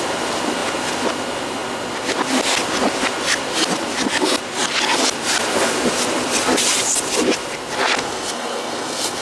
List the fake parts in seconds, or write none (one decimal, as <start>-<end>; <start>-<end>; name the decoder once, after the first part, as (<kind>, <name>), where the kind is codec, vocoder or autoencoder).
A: 8.0-9.2 (codec, SNAC)